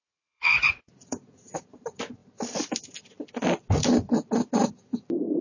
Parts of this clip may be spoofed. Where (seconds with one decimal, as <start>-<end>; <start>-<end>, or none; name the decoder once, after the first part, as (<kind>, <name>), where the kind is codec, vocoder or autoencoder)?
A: 0.0-1.6 (vocoder, Vocos)